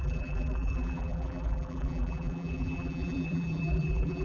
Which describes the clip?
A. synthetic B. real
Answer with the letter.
A